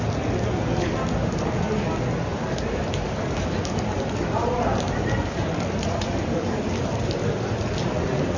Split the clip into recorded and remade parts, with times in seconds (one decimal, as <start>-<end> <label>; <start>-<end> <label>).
0.0-2.3 recorded; 2.3-3.1 remade; 3.1-4.4 recorded; 4.4-6.7 remade; 6.7-8.4 recorded